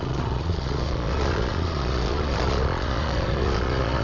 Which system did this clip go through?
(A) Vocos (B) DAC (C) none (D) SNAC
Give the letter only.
A